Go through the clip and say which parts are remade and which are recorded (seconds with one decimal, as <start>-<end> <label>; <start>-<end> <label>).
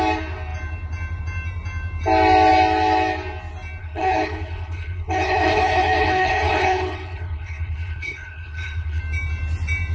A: 0.0-3.8 recorded; 3.8-9.0 remade; 9.0-9.9 recorded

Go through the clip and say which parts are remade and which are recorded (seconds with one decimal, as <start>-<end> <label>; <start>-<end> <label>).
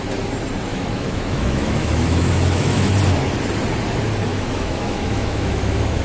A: 0.0-0.7 recorded; 0.7-2.9 remade; 2.9-4.3 recorded; 4.3-6.0 remade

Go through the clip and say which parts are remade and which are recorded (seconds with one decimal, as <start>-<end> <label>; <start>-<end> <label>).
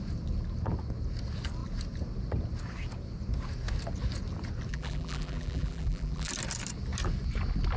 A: 0.0-4.7 recorded; 4.7-6.3 remade; 6.3-7.8 recorded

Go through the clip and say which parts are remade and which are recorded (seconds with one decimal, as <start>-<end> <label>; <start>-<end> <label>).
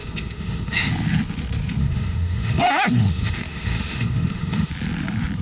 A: 0.0-0.9 remade; 0.9-1.8 recorded; 1.8-4.7 remade; 4.7-5.4 recorded